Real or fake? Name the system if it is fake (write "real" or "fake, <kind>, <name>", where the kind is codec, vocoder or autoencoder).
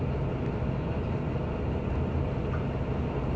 real